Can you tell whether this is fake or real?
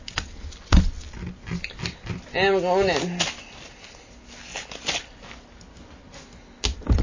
real